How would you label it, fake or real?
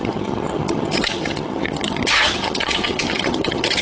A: fake